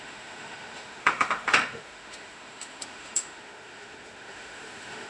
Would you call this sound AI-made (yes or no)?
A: yes